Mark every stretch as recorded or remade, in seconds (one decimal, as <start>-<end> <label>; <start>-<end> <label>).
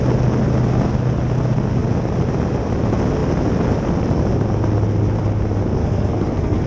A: 0.0-5.8 recorded; 5.8-6.7 remade